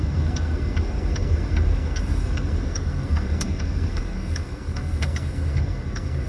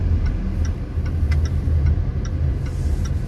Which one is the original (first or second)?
second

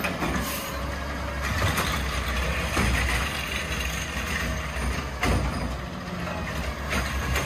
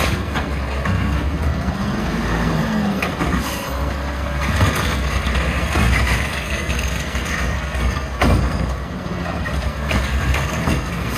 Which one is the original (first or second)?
first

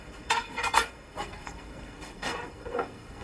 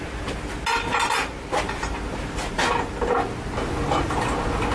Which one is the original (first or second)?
second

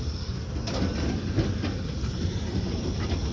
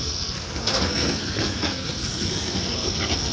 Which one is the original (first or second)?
first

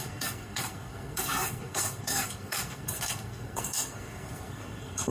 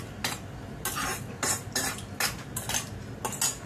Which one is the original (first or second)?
second